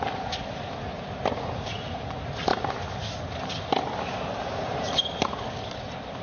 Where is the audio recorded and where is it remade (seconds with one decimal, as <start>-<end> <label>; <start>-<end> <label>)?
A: 0.0-6.2 recorded